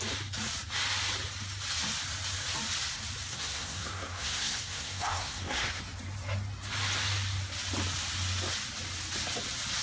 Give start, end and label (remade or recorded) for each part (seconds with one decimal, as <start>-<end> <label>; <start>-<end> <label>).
0.0-3.3 recorded; 3.3-5.8 remade; 5.8-9.8 recorded